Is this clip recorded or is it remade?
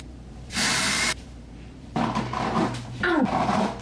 remade